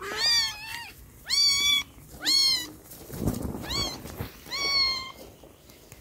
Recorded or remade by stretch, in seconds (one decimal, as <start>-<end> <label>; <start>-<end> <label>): 0.0-0.7 recorded; 0.7-4.3 remade; 4.3-6.0 recorded